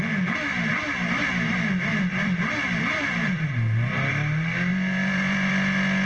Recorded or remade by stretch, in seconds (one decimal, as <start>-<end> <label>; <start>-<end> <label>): 0.0-0.8 recorded; 0.8-4.1 remade; 4.1-4.7 recorded; 4.7-5.5 remade; 5.5-6.1 recorded